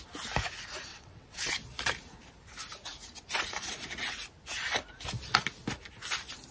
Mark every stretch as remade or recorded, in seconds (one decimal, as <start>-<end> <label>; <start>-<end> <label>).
0.0-0.9 recorded; 0.9-1.5 remade; 1.5-6.5 recorded